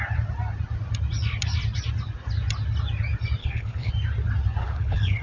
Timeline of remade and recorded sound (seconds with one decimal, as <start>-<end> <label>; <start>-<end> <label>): 0.0-3.4 recorded; 3.4-3.9 remade; 3.9-4.6 recorded; 4.6-5.2 remade